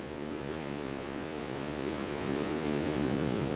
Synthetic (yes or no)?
yes